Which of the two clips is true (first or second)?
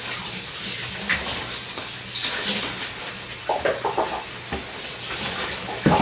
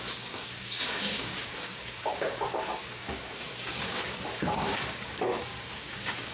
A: first